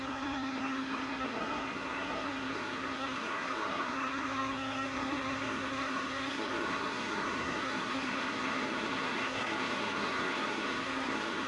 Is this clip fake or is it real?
fake